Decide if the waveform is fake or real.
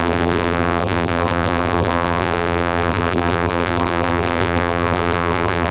fake